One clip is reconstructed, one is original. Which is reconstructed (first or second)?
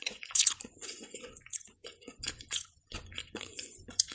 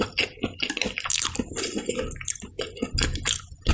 first